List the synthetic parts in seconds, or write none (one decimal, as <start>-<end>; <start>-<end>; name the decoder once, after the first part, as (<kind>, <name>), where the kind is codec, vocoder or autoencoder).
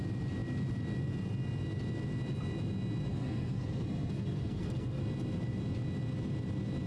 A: 3.1-5.0 (codec, SNAC)